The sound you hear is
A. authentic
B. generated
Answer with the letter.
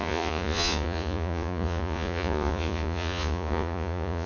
B